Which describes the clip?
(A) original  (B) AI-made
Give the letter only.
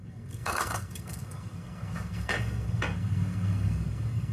B